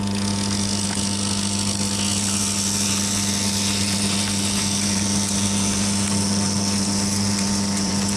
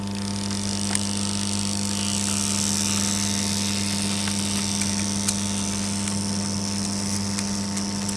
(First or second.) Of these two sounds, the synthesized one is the first